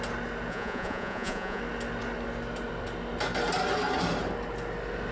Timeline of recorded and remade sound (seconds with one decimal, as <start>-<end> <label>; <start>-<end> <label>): 0.0-0.5 recorded; 0.5-1.6 remade; 1.6-5.1 recorded